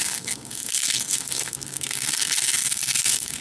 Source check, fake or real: fake